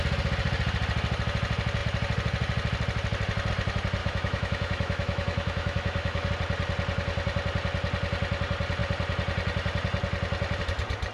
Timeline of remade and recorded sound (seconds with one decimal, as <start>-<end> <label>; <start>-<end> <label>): 0.0-4.0 recorded; 4.0-6.3 remade; 6.3-11.1 recorded